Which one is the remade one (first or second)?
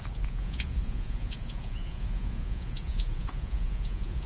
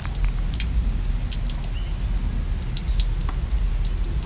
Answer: first